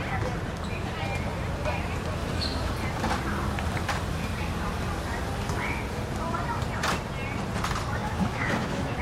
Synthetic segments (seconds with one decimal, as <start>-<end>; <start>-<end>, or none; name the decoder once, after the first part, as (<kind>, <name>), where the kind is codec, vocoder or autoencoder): 2.2-2.7 (autoencoder, DAC-VAE); 8.0-9.0